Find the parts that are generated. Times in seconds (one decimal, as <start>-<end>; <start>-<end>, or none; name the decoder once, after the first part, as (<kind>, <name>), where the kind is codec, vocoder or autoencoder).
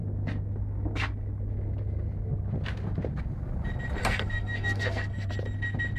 4.0-5.3 (codec, SNAC)